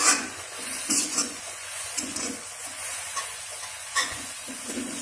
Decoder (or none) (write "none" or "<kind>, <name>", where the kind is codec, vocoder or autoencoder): vocoder, Vocos